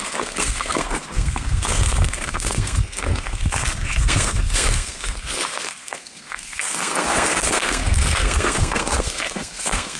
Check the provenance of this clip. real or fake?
fake